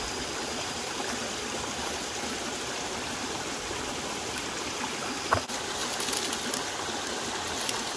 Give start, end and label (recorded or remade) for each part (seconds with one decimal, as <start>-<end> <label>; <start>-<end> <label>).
0.0-5.8 remade; 5.8-8.0 recorded